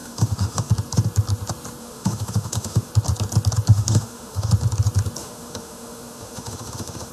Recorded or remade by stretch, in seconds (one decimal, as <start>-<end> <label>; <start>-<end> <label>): 0.0-0.7 remade; 0.7-1.8 recorded; 1.8-2.9 remade; 2.9-3.7 recorded; 3.7-4.5 remade; 4.5-5.2 recorded; 5.2-7.1 remade